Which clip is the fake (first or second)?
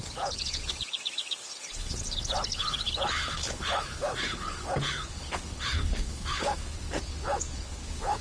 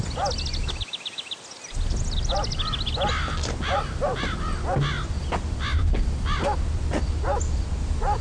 first